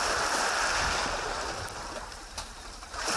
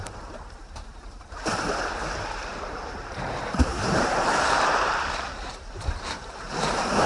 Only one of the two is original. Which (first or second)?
first